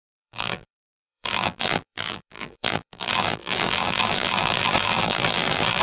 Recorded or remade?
remade